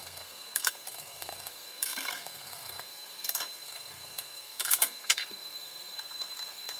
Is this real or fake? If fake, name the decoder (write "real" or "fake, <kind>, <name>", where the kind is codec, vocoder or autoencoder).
fake, codec, SNAC